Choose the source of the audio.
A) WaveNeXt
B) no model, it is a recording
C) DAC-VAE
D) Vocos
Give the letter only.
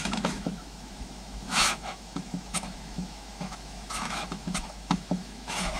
C